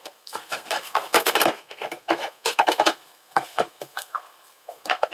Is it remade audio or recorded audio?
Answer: remade